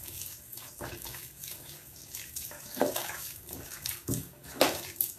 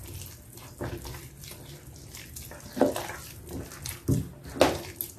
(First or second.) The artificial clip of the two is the first